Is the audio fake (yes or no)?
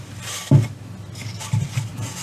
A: no